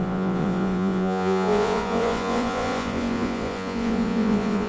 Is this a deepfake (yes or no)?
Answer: yes